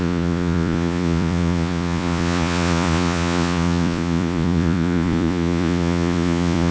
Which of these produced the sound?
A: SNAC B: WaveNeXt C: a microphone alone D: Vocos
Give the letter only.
D